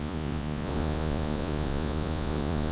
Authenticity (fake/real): fake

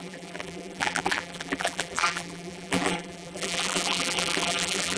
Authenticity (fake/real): fake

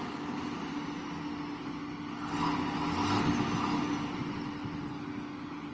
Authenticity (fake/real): real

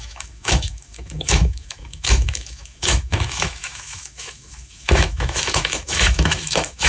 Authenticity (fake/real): fake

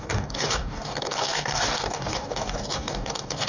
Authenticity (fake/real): fake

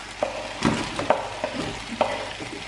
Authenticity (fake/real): real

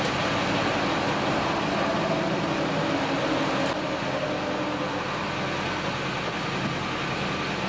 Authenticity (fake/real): real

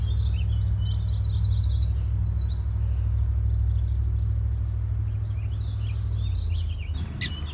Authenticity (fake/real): real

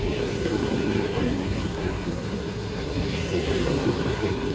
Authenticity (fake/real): fake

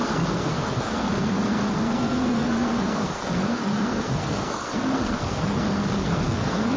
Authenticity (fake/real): fake